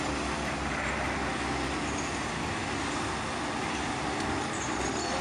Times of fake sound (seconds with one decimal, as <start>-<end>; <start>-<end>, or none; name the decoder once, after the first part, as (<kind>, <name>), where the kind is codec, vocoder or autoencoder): none